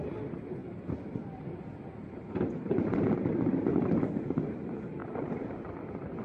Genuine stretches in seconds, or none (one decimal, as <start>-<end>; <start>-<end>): 0.0-0.6; 3.7-6.2